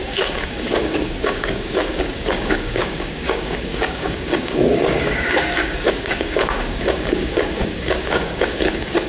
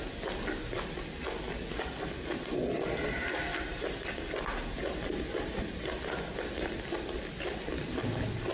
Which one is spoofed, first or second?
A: first